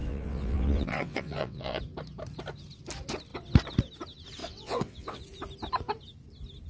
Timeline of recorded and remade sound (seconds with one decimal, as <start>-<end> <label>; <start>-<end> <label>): 0.0-1.8 remade; 1.8-4.4 recorded; 4.4-5.2 remade; 5.2-6.7 recorded